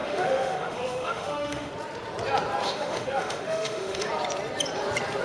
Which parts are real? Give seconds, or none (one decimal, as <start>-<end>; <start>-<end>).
1.7-2.6; 4.1-5.2